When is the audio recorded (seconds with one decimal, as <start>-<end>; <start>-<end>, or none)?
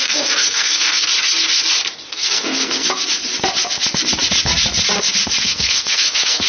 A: 1.1-2.1; 3.0-5.4